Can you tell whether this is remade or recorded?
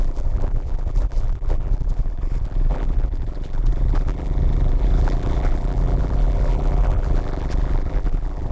remade